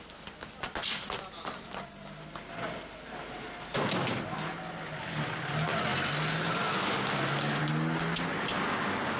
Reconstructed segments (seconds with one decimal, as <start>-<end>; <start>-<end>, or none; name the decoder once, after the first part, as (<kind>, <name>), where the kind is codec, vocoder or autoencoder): none